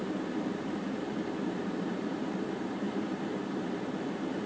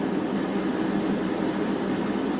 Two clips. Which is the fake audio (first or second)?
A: first